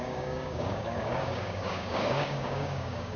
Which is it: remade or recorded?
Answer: remade